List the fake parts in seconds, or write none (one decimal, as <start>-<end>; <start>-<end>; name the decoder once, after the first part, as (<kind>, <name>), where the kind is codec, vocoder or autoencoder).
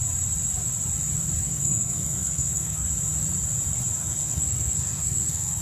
1.4-2.9 (codec, SNAC); 4.0-5.6